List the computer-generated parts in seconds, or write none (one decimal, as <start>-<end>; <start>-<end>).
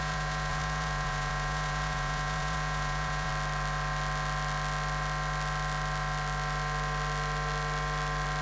0.0-3.3